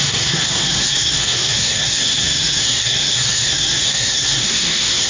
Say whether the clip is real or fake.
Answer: fake